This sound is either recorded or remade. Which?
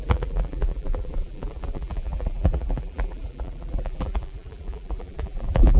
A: remade